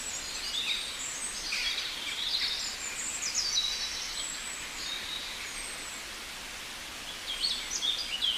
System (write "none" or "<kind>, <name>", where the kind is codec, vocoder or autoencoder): none